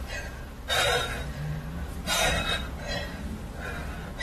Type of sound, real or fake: real